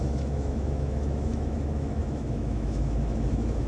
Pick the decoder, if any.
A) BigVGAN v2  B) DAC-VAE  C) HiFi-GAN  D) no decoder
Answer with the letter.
B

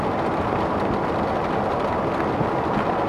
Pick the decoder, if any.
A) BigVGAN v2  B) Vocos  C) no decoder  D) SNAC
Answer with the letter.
C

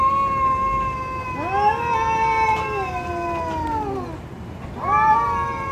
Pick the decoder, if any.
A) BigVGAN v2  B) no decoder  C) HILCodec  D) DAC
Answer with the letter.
B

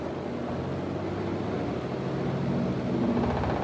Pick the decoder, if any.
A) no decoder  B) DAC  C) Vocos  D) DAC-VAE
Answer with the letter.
A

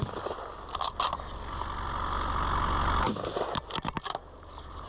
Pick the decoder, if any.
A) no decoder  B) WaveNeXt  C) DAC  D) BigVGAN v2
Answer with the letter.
A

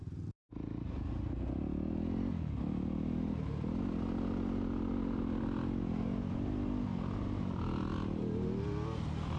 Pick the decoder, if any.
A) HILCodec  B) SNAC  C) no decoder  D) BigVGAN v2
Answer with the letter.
C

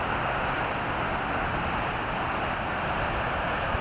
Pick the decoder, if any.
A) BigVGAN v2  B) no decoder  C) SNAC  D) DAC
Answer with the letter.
B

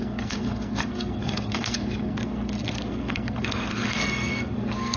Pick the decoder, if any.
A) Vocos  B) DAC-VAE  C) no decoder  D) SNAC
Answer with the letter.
D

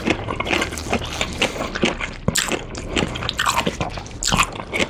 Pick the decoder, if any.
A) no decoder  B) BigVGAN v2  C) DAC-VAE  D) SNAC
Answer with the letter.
A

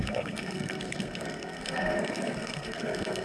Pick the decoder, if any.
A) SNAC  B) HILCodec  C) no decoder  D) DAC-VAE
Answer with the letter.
A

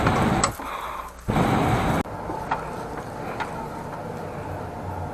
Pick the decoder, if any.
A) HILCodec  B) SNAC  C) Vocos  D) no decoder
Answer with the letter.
D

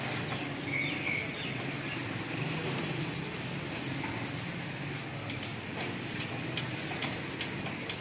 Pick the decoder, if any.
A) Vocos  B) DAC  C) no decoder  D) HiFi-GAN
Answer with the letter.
C